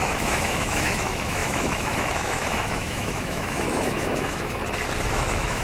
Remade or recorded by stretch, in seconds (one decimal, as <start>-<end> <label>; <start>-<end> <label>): 0.0-4.6 remade; 4.6-5.1 recorded; 5.1-5.6 remade

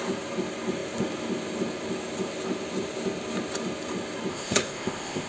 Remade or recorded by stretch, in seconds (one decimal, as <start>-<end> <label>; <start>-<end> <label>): 0.0-4.3 recorded; 4.3-5.3 remade

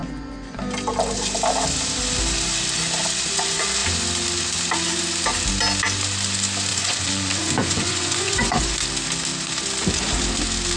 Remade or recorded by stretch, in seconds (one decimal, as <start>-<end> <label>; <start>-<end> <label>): 0.0-0.6 remade; 0.6-6.7 recorded; 6.7-8.8 remade; 8.8-10.8 recorded

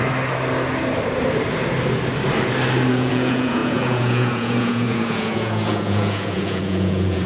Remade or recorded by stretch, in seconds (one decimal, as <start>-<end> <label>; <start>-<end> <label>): 0.0-2.9 recorded; 2.9-7.3 remade

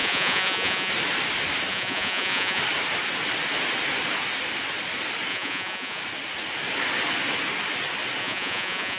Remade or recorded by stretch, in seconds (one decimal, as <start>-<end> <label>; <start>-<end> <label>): 0.0-0.9 remade; 0.9-1.7 recorded; 1.7-2.6 remade; 2.6-5.3 recorded; 5.3-6.0 remade; 6.0-8.2 recorded; 8.2-9.0 remade

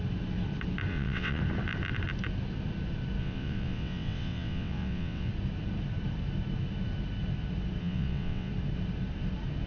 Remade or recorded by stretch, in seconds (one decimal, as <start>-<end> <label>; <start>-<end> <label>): 0.0-0.9 recorded; 0.9-1.4 remade; 1.4-3.2 recorded; 3.2-5.3 remade; 5.3-7.8 recorded; 7.8-8.5 remade; 8.5-9.7 recorded

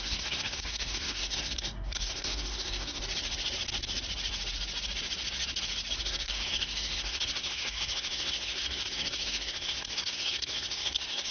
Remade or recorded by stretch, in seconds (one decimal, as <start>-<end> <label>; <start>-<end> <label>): 0.0-3.0 remade; 3.0-6.0 recorded; 6.0-11.3 remade